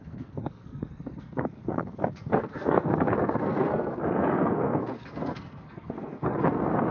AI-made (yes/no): yes